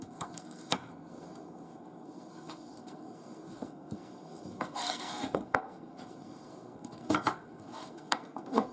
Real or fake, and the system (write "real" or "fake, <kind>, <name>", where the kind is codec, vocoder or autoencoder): fake, codec, SNAC